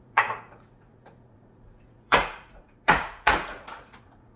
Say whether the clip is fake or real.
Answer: fake